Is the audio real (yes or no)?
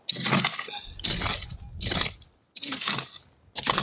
yes